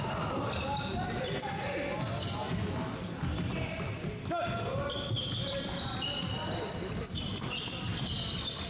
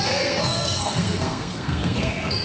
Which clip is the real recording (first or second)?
first